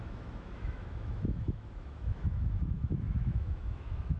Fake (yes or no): yes